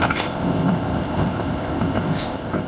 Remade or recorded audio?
remade